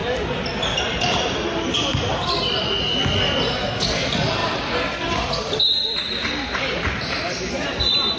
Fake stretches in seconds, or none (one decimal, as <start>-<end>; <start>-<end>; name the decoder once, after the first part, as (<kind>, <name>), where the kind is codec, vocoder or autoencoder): 0.0-1.0 (vocoder, BigVGAN v2); 4.4-7.0